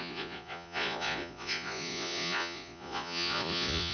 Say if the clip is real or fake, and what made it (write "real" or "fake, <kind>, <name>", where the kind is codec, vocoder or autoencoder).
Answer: fake, vocoder, Vocos